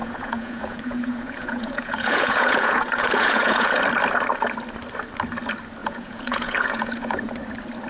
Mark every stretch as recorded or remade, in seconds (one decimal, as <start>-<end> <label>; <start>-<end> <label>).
0.0-3.8 remade; 3.8-5.8 recorded; 5.8-7.3 remade; 7.3-7.9 recorded